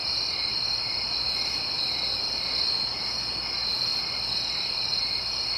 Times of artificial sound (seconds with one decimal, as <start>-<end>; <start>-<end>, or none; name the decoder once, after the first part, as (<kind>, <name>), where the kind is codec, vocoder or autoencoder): none